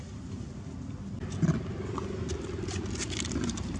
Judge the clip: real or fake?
real